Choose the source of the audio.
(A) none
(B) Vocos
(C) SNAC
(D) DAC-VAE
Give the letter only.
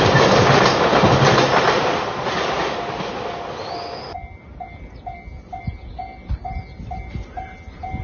A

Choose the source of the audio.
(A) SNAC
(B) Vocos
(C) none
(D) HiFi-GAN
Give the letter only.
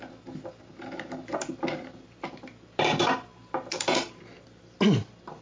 C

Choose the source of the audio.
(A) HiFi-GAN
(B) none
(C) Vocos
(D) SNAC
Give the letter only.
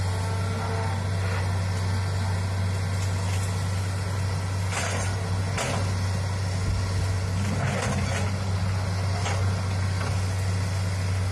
B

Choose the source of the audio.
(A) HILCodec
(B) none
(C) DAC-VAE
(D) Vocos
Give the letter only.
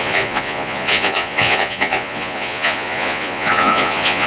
D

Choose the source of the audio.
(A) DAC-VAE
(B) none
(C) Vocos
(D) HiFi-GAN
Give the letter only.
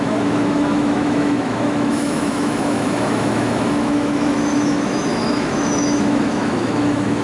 A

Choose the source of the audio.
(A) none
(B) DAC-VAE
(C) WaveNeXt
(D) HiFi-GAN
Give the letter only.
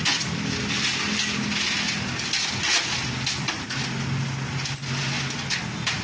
A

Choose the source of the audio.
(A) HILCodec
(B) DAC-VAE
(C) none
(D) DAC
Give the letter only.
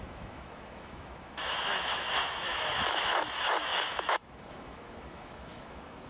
B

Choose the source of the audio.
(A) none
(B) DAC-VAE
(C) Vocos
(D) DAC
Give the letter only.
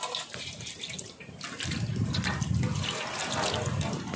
A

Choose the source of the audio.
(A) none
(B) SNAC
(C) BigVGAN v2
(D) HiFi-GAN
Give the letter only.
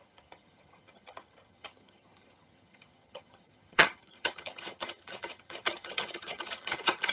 D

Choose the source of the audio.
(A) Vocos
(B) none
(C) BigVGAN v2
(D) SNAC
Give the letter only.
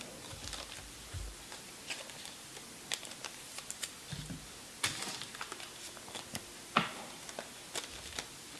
B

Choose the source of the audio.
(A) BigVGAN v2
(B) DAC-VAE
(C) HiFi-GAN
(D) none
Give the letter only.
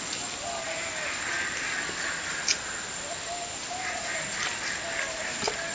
D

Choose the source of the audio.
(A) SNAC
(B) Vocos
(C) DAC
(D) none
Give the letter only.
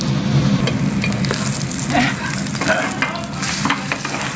D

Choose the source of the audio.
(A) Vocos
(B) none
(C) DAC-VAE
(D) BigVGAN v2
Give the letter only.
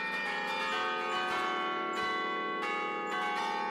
B